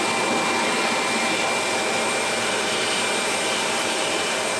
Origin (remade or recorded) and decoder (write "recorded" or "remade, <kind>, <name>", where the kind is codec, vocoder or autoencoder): recorded